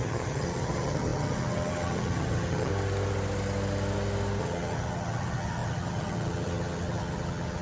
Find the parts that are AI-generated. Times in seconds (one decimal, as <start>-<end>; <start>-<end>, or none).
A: 0.0-2.7; 4.4-7.6